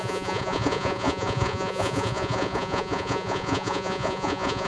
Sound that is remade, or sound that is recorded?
remade